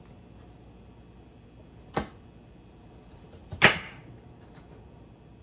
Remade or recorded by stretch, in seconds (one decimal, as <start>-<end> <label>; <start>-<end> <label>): 0.0-5.4 recorded